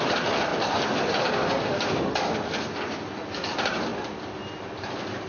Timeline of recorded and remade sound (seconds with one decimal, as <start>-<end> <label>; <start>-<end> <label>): 0.0-5.3 recorded